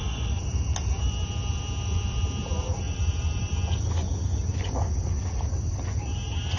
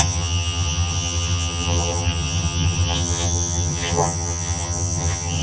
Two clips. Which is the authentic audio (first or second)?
first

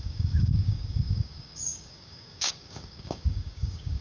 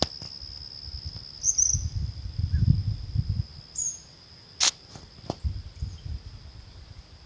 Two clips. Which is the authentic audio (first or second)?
second